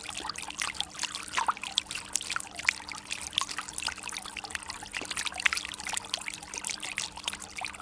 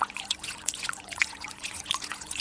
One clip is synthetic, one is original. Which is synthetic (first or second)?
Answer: second